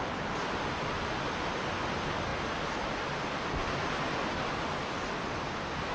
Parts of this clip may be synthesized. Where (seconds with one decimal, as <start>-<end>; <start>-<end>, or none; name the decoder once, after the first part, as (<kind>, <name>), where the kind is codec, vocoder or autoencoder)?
none